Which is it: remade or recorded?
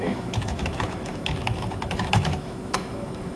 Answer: remade